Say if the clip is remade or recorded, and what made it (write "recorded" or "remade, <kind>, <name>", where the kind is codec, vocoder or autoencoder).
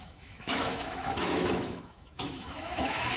remade, autoencoder, DAC-VAE